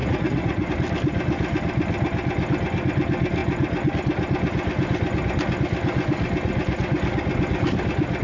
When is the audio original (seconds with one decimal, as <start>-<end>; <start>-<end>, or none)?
0.7-8.2